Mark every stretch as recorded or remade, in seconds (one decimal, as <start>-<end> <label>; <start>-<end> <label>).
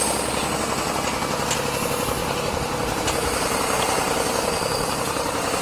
0.0-2.2 recorded; 2.2-5.6 remade